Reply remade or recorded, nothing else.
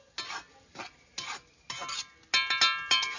recorded